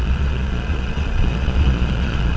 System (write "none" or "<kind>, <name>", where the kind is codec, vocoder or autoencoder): vocoder, Vocos